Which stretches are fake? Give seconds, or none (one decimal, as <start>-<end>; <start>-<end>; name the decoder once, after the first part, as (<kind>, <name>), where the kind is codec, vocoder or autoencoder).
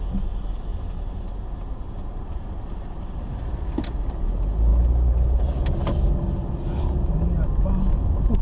0.7-3.3 (vocoder, BigVGAN v2)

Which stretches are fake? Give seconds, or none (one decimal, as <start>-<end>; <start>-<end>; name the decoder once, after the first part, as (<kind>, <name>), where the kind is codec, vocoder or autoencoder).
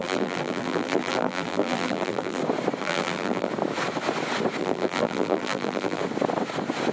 0.0-2.4 (vocoder, BigVGAN v2); 2.8-3.5; 4.6-6.0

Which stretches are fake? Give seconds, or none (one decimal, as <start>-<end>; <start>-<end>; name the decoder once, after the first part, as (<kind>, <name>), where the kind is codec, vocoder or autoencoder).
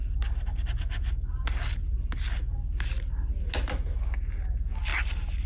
none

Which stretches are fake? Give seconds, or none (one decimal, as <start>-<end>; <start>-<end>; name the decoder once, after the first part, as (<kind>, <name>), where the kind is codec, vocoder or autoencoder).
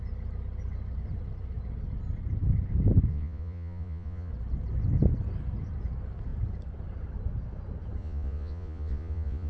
3.1-4.3 (vocoder, Vocos); 8.0-9.5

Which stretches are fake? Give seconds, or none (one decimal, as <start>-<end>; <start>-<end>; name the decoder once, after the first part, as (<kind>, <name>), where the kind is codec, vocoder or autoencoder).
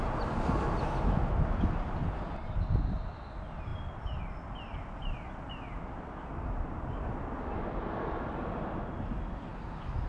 none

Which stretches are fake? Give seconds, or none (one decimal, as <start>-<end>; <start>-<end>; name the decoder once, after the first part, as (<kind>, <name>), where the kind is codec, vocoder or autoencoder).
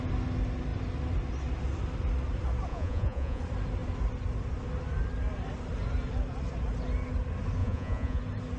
2.7-3.4 (vocoder, Vocos); 7.6-8.2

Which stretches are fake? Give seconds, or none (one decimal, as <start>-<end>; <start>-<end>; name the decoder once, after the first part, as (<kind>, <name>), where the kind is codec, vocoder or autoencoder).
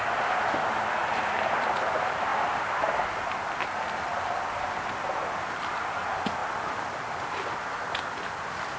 none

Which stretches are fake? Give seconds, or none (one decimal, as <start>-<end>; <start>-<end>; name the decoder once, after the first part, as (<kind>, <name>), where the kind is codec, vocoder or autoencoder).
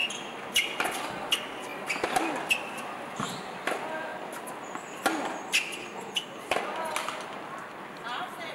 none